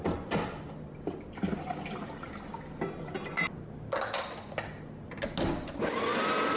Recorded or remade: recorded